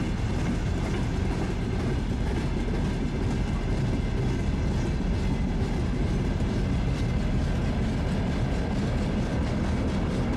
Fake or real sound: real